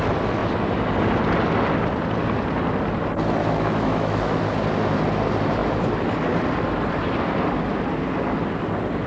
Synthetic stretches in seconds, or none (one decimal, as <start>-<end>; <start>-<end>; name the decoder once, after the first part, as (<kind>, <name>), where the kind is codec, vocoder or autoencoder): 3.4-4.4 (autoencoder, DAC-VAE)